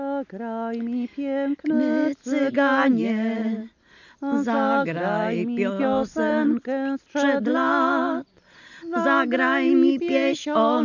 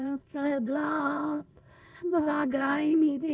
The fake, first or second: second